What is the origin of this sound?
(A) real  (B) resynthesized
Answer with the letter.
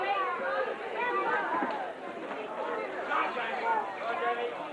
A